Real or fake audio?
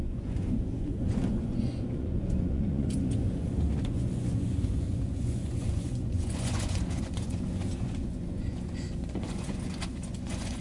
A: fake